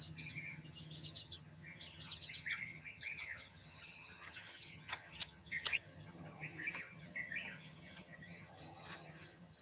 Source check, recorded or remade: remade